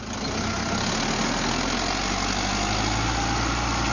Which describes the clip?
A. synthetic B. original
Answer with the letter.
B